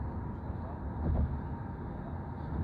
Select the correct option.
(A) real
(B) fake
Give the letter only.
A